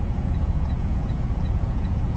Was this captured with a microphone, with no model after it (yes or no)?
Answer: no